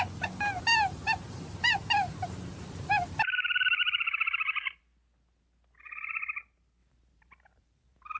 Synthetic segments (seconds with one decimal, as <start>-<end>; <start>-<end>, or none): 1.0-4.8; 6.8-8.2